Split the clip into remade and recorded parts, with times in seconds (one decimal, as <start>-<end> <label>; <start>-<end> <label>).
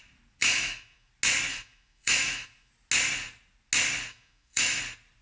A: 0.0-0.4 recorded; 0.4-1.1 remade; 1.1-1.5 recorded; 1.5-2.7 remade; 2.7-4.1 recorded; 4.1-4.8 remade; 4.8-5.2 recorded